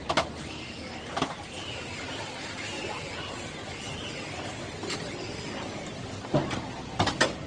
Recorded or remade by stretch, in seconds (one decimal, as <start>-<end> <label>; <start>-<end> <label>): 0.0-7.5 recorded